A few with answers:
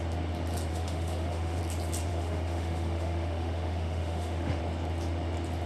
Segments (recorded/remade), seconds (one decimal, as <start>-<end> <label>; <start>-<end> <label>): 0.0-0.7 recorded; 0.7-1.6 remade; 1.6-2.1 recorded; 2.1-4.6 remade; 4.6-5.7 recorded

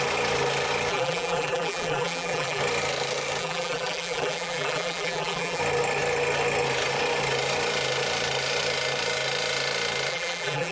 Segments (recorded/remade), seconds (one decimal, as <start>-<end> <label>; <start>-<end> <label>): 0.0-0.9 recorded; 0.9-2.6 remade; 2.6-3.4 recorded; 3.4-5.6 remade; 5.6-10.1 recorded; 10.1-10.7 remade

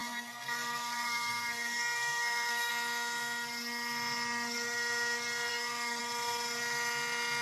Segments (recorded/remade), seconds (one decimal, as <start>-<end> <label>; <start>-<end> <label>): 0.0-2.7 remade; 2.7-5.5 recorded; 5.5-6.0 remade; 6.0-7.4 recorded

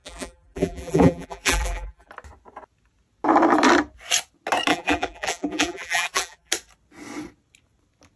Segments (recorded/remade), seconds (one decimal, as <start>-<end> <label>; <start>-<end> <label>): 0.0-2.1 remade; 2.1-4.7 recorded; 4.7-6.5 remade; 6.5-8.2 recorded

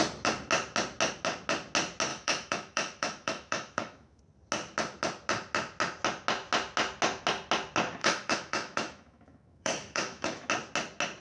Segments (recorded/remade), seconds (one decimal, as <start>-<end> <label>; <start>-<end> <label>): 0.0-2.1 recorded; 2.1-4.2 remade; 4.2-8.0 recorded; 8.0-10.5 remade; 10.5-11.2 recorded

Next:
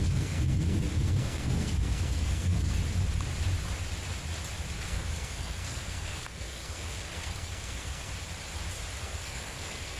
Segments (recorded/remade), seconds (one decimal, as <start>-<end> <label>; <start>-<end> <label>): 0.0-2.8 remade; 2.8-4.8 recorded; 4.8-8.1 remade; 8.1-9.0 recorded; 9.0-10.0 remade